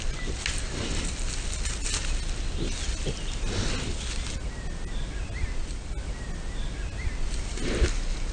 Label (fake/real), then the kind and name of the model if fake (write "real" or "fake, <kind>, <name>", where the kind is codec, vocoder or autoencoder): real